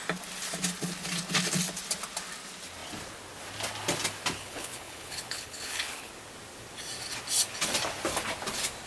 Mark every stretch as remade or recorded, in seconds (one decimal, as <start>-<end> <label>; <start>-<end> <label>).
0.0-4.4 recorded; 4.4-6.1 remade; 6.1-8.9 recorded